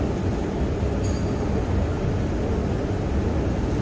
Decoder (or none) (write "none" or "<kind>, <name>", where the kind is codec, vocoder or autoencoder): none